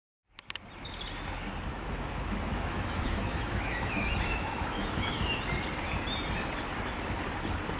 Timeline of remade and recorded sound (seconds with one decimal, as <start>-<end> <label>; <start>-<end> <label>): 0.0-1.7 recorded; 1.7-5.4 remade; 5.4-7.8 recorded